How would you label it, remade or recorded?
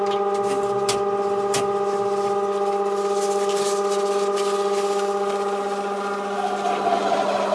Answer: recorded